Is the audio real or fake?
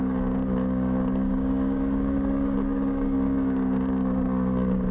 fake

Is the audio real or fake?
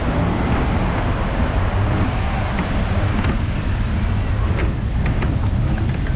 real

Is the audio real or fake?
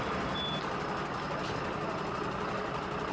real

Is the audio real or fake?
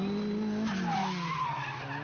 real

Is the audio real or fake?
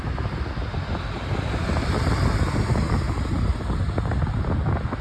real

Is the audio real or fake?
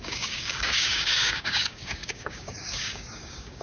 fake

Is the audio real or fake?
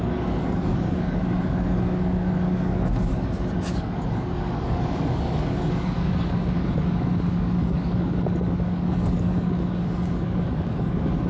fake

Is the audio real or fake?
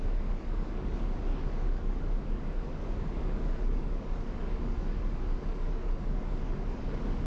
fake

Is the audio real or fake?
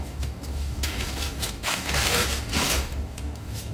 fake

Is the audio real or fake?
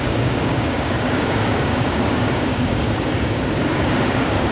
fake